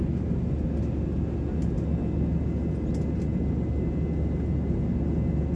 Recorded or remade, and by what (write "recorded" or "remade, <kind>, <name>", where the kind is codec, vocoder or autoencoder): recorded